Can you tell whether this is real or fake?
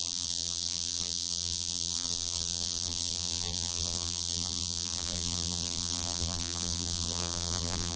fake